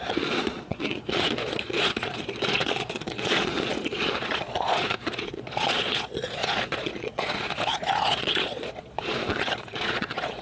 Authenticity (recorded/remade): remade